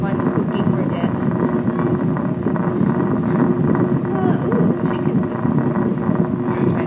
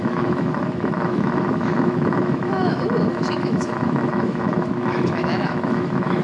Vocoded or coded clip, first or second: second